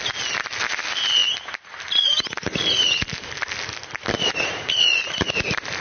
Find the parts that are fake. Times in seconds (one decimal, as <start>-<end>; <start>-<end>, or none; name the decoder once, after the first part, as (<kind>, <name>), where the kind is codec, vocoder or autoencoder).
none